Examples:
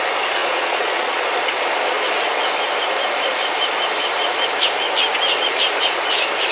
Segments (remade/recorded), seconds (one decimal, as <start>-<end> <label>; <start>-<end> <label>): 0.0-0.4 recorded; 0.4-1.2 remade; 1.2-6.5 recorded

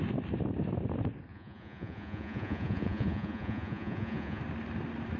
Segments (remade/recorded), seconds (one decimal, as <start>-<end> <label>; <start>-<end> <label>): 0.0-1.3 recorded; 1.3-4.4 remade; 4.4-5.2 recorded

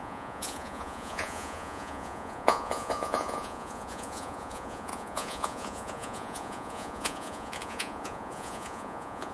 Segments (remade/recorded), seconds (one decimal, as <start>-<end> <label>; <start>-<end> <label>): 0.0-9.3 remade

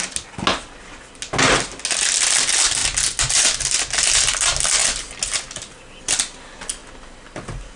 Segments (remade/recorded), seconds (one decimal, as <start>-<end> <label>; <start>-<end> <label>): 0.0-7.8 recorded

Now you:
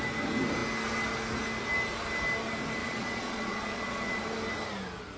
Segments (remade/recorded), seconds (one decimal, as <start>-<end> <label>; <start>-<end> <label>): 0.0-2.8 recorded; 2.8-4.2 remade; 4.2-5.2 recorded

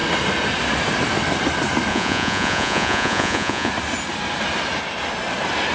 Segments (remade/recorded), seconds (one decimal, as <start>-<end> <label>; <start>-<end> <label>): 0.0-1.9 recorded; 1.9-3.7 remade; 3.7-5.7 recorded

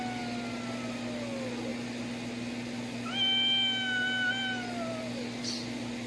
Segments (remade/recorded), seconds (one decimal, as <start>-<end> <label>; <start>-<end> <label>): 0.0-6.1 recorded